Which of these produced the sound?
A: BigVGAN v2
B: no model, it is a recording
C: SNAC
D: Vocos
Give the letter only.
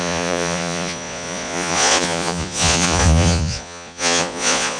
D